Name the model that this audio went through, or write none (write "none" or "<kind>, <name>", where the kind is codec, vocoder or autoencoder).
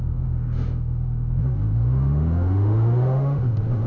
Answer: autoencoder, DAC-VAE